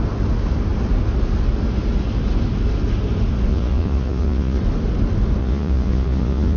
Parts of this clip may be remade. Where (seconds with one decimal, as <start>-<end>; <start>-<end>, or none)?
3.5-4.6; 5.4-6.6